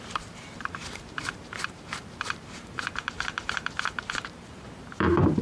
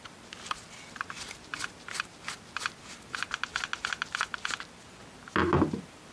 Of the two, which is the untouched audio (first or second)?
second